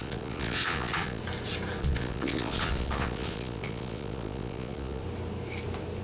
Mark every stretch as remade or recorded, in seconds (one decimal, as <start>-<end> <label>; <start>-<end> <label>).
0.0-1.2 remade; 1.2-1.8 recorded; 1.8-5.0 remade; 5.0-6.0 recorded

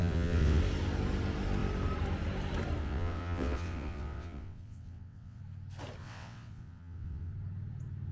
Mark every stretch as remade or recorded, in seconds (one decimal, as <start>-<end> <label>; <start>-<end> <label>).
0.0-0.6 remade; 0.6-2.8 recorded; 2.8-5.4 remade; 5.4-6.0 recorded; 6.0-7.3 remade; 7.3-8.1 recorded

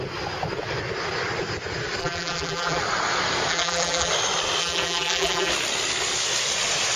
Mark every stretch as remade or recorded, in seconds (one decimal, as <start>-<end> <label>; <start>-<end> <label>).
0.0-2.0 recorded; 2.0-2.8 remade; 2.8-3.5 recorded; 3.5-4.1 remade; 4.1-4.6 recorded; 4.6-5.5 remade; 5.5-7.0 recorded

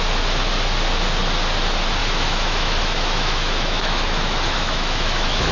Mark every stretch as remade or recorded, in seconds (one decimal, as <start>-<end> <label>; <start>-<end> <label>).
0.0-2.0 recorded; 2.0-5.5 remade

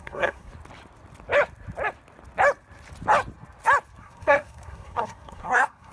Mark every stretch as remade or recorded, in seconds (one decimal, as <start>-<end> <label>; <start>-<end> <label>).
0.0-0.5 remade; 0.5-4.0 recorded; 4.0-5.9 remade

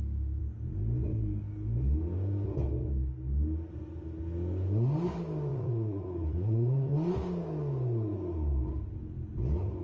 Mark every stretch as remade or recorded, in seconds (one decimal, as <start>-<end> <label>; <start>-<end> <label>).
0.0-5.5 recorded; 5.5-6.9 remade; 6.9-9.8 recorded

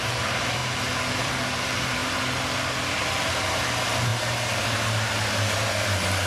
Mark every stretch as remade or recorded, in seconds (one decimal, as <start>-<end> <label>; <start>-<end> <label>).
0.0-0.6 remade; 0.6-1.2 recorded; 1.2-2.0 remade; 2.0-3.4 recorded; 3.4-6.3 remade

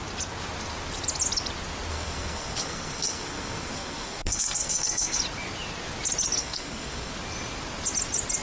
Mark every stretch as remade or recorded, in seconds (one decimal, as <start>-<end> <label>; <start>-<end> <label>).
0.0-1.9 recorded; 1.9-5.2 remade; 5.2-6.4 recorded; 6.4-7.1 remade; 7.1-8.4 recorded